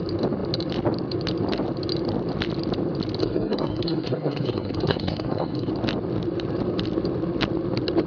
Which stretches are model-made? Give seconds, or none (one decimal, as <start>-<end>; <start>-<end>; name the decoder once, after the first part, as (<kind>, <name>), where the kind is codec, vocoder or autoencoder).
3.2-5.7 (codec, SNAC)